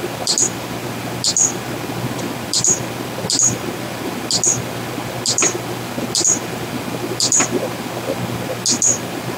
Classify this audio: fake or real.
real